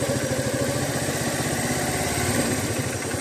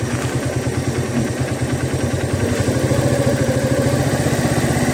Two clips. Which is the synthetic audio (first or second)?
first